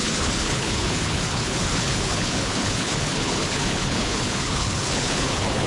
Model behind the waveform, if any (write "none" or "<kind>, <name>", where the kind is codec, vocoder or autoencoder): codec, HILCodec